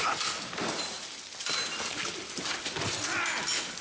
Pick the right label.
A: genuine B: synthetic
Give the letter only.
A